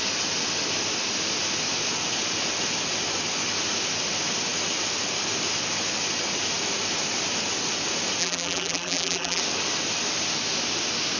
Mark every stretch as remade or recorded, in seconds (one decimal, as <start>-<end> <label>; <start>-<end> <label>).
0.0-8.2 recorded; 8.2-9.4 remade; 9.4-11.2 recorded